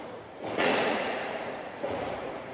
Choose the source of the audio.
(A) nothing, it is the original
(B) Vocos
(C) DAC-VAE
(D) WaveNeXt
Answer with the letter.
B